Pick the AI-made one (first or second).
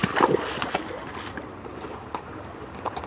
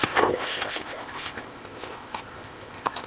second